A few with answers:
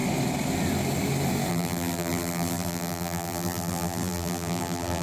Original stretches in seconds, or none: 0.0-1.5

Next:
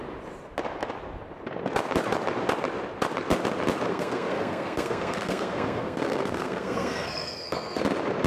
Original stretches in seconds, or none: 0.0-3.9; 7.8-8.3

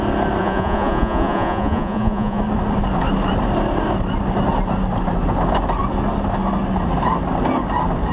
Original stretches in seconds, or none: 0.0-0.4; 2.4-8.1

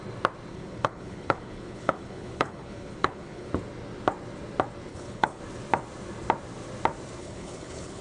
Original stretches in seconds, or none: 0.0-0.5; 3.5-4.9; 5.4-7.2

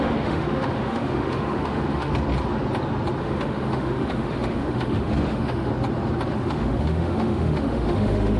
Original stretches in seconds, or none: 2.1-3.2; 5.7-6.3

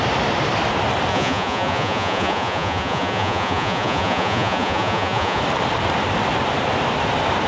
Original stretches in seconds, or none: 0.0-1.1; 5.4-7.5

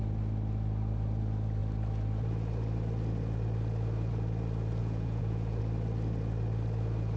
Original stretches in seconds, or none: 0.0-4.8; 5.6-7.2